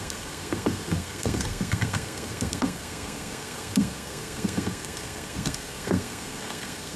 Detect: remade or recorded remade